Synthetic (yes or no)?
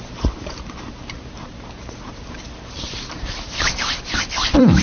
yes